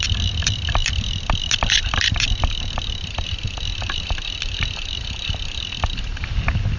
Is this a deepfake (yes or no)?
no